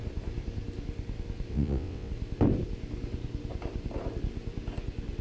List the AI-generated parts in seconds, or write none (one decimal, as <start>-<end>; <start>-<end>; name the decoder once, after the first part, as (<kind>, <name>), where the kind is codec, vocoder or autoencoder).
1.5-2.1 (vocoder, WaveNeXt)

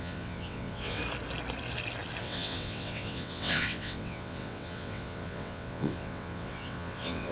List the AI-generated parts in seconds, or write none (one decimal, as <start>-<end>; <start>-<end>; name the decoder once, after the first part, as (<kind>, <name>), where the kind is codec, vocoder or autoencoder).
0.0-1.0 (vocoder, WaveNeXt); 2.2-7.3

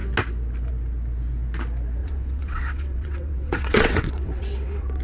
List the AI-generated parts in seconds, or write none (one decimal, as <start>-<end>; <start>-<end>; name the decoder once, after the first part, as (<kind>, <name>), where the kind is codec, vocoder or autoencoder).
2.0-5.0 (vocoder, WaveNeXt)

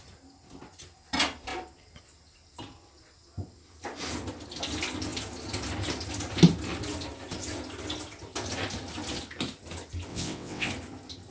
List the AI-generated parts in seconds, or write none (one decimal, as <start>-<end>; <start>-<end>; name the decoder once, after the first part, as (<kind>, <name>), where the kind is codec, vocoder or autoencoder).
10.1-10.7 (vocoder, WaveNeXt)

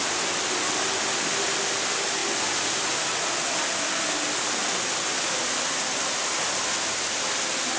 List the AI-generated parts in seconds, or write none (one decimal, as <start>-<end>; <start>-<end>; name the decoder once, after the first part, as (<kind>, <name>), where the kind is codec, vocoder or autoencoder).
none

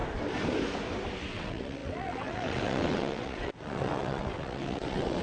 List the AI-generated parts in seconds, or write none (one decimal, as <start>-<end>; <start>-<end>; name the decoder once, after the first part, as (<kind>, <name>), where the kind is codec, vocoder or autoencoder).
1.3-5.2 (vocoder, WaveNeXt)

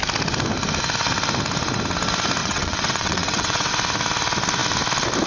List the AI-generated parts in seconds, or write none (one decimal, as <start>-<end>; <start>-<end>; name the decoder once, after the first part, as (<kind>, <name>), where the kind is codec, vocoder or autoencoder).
2.4-3.7 (vocoder, WaveNeXt)

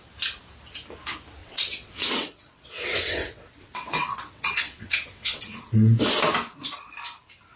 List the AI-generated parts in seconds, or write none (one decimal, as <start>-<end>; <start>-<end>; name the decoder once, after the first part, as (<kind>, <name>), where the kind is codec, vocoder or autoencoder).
1.4-6.0 (vocoder, WaveNeXt)